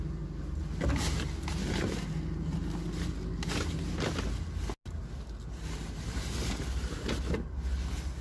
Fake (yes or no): no